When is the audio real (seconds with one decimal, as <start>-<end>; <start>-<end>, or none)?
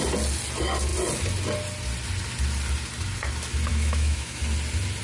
0.0-3.7; 4.4-5.0